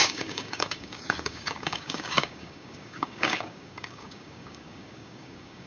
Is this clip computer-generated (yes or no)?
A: yes